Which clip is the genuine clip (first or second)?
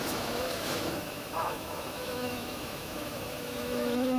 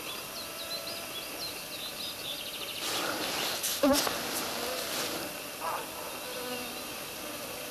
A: second